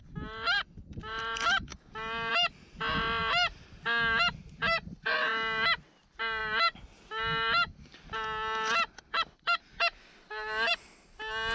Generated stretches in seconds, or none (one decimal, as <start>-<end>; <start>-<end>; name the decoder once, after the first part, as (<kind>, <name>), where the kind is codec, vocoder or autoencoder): none